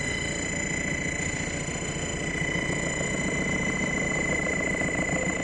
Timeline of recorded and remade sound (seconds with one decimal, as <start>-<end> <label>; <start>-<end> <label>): 0.0-2.1 recorded; 2.1-5.4 remade